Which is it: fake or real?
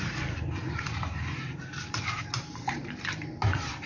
fake